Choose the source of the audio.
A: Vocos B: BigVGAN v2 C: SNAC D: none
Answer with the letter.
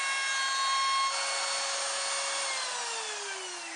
D